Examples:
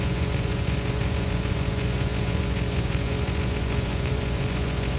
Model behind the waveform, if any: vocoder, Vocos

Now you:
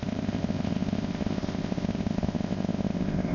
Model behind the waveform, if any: codec, ZipCodec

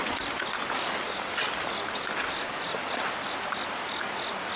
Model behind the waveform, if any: none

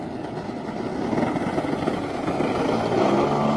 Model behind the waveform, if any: none